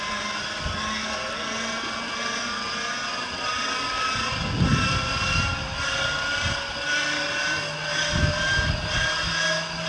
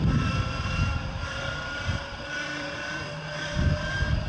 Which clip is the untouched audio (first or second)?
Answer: first